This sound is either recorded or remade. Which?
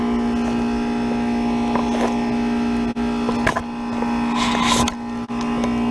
recorded